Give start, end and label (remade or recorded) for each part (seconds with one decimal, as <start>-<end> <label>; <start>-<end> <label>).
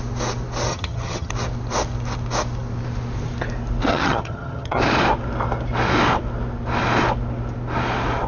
0.0-0.7 recorded; 0.7-1.3 remade; 1.3-3.9 recorded; 3.9-4.8 remade; 4.8-8.3 recorded